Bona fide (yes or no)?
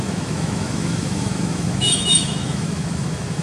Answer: no